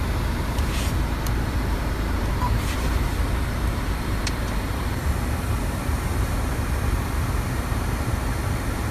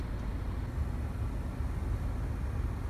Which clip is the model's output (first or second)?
first